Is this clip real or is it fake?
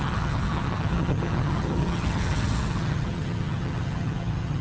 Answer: fake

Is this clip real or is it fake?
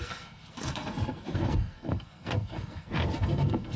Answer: fake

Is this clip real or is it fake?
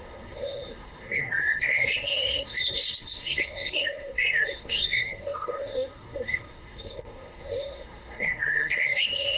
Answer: fake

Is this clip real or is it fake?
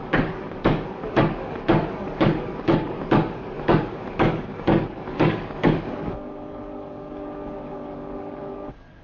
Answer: fake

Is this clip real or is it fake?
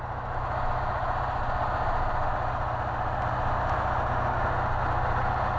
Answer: real